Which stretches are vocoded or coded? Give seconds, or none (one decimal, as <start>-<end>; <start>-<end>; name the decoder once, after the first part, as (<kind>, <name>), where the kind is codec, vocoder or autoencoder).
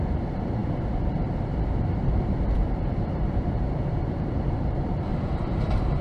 0.0-5.1 (vocoder, BigVGAN v2)